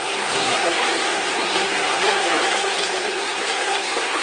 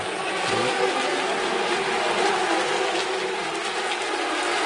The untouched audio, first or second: second